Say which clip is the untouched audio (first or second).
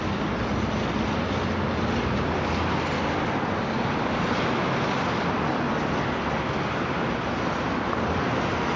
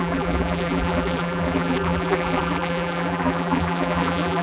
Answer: first